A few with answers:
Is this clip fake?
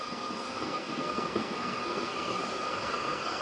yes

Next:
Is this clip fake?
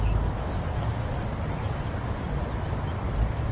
no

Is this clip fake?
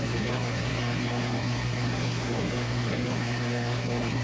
yes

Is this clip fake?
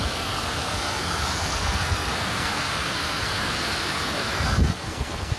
yes